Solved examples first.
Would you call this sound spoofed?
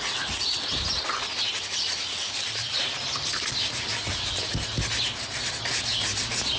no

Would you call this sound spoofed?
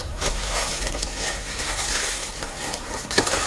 yes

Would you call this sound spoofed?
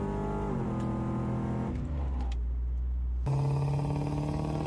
no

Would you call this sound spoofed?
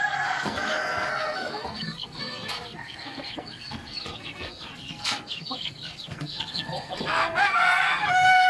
yes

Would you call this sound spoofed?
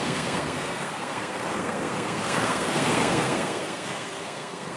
yes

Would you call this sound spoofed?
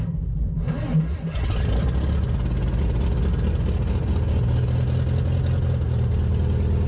no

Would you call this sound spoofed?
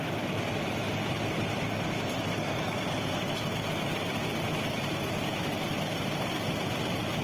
no